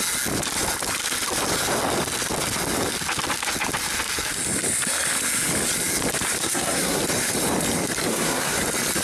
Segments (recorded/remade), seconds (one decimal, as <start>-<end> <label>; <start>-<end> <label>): 0.0-6.4 recorded; 6.4-7.0 remade; 7.0-8.1 recorded; 8.1-8.6 remade; 8.6-9.0 recorded